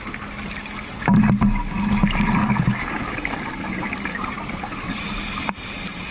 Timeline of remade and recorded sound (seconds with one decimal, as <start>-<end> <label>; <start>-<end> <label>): 0.0-2.4 recorded; 2.4-5.0 remade; 5.0-6.1 recorded